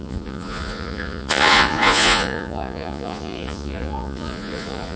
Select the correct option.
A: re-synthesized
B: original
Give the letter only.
A